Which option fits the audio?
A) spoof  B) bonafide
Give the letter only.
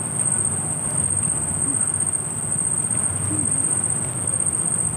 B